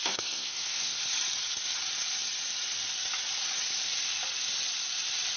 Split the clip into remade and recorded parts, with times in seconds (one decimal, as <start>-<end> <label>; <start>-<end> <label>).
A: 0.0-1.0 remade; 1.0-5.4 recorded